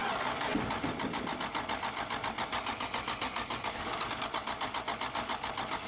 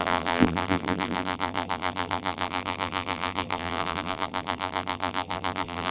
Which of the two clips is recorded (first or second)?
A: first